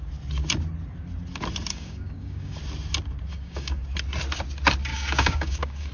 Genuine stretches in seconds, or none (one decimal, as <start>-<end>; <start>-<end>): 0.0-1.7; 2.6-3.3; 3.8-4.9